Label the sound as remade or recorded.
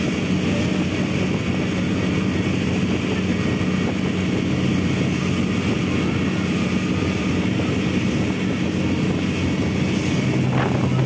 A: recorded